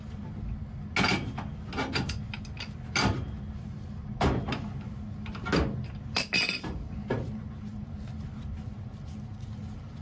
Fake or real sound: real